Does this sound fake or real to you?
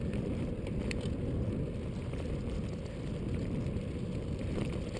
real